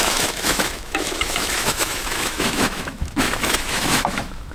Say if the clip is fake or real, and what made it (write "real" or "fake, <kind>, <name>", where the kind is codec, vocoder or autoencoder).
fake, autoencoder, DAC-VAE